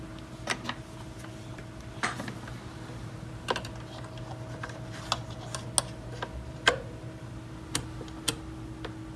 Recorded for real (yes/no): yes